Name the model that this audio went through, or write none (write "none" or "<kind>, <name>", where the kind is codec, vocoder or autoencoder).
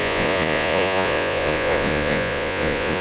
vocoder, Vocos